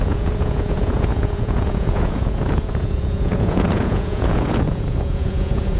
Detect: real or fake fake